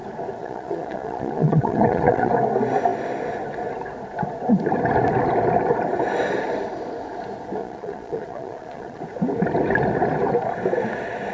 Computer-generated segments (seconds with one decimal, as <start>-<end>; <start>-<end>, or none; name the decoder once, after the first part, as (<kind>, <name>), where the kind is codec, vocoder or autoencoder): 0.4-2.3 (vocoder, Vocos); 7.6-9.0